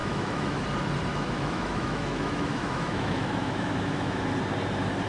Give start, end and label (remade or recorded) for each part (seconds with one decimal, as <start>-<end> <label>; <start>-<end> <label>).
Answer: 0.0-0.6 remade; 0.6-1.1 recorded; 1.1-4.2 remade; 4.2-5.1 recorded